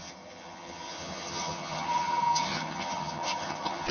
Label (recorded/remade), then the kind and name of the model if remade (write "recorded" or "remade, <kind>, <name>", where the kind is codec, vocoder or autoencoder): remade, vocoder, HiFi-GAN